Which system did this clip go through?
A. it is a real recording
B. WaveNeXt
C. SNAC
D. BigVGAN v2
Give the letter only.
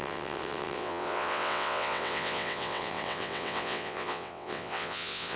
B